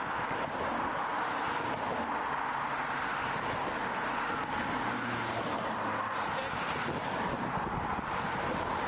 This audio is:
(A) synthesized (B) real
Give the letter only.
B